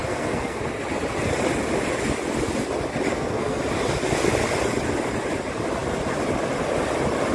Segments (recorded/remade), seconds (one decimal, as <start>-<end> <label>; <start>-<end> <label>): 0.0-0.6 remade; 0.6-3.1 recorded; 3.1-3.6 remade; 3.6-7.3 recorded